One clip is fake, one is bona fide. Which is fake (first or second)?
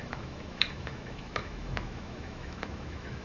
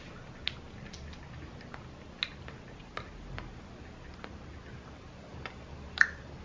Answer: first